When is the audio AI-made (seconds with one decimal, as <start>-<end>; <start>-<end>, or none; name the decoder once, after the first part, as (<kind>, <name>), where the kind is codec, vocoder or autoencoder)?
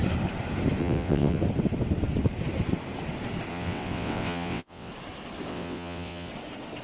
0.8-1.4 (vocoder, WaveNeXt); 3.5-4.9; 5.5-6.3